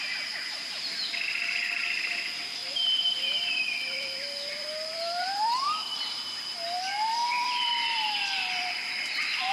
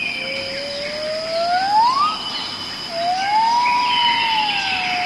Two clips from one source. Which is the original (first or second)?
second